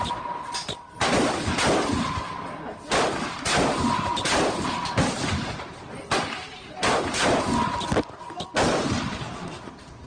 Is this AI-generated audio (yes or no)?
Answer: no